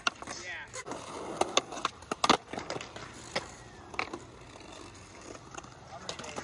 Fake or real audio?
real